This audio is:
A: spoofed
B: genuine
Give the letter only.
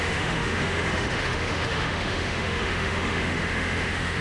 A